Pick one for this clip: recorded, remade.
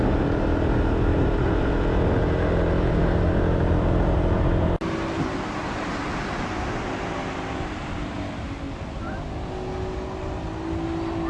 recorded